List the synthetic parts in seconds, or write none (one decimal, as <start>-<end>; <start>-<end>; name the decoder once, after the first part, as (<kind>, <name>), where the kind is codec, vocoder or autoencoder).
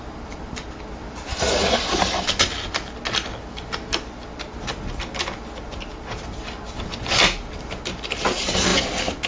none